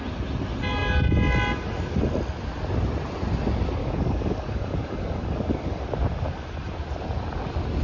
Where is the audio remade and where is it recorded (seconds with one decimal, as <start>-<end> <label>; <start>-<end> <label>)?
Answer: 0.0-3.8 recorded; 3.8-5.8 remade; 5.8-7.8 recorded